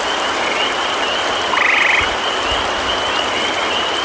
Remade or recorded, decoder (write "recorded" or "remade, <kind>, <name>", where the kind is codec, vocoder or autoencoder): recorded